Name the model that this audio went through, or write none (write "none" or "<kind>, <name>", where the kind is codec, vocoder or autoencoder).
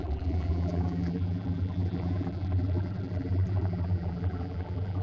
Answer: vocoder, BigVGAN v2